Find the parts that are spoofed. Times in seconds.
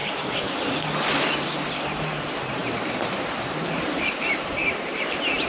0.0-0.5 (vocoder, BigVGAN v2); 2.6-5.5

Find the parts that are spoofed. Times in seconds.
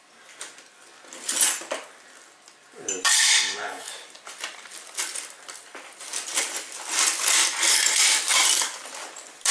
3.1-3.9 (codec, HILCodec)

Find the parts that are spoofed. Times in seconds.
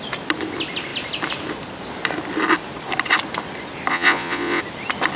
3.9-4.6 (vocoder, Vocos)